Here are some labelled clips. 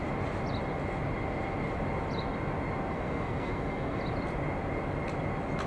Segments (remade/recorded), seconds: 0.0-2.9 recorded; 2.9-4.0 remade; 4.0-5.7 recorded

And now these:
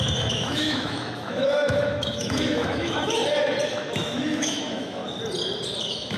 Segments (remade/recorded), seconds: 0.0-3.2 remade; 3.2-3.7 recorded; 3.7-5.0 remade; 5.0-5.8 recorded; 5.8-6.2 remade